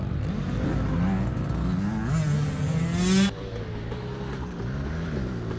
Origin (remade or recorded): recorded